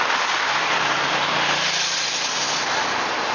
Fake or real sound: real